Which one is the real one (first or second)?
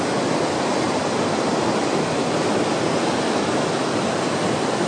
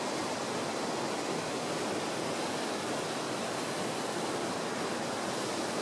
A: second